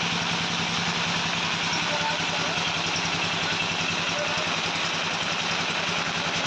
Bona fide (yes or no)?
yes